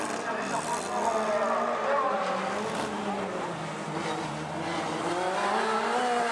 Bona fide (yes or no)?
yes